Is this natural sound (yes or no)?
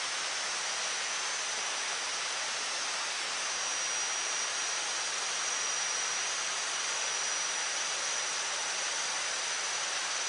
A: yes